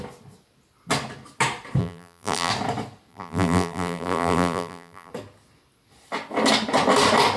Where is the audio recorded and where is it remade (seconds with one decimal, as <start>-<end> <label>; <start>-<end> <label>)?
0.0-1.8 recorded; 1.8-2.5 remade; 2.5-3.1 recorded; 3.1-5.1 remade; 5.1-7.4 recorded